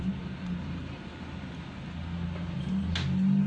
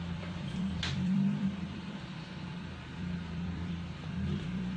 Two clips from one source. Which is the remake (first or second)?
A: second